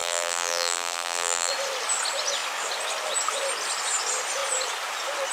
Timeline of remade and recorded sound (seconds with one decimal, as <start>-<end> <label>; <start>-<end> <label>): 0.0-1.5 remade; 1.5-5.3 recorded

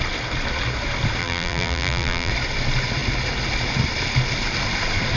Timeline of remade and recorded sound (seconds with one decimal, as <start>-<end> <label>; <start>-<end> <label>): 0.0-1.2 recorded; 1.2-2.3 remade; 2.3-5.2 recorded

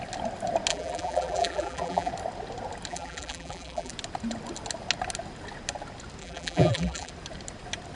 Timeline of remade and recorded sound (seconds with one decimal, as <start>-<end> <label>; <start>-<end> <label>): 0.0-0.7 recorded; 0.7-2.1 remade; 2.1-2.9 recorded; 2.9-3.9 remade; 3.9-6.2 recorded; 6.2-7.1 remade; 7.1-7.9 recorded

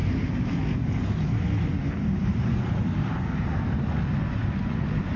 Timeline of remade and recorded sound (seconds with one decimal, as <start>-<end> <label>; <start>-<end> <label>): 0.0-3.1 remade; 3.1-5.2 recorded

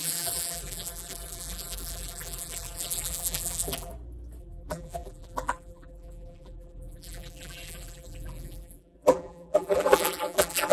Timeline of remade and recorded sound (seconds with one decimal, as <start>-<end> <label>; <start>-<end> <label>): 0.0-3.9 remade; 3.9-4.4 recorded; 4.4-10.7 remade

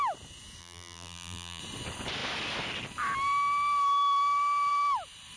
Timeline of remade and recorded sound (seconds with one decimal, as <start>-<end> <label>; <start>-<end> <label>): 0.0-0.6 recorded; 0.6-1.6 remade; 1.6-5.4 recorded